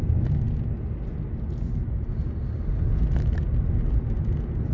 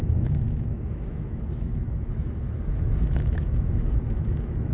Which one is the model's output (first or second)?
second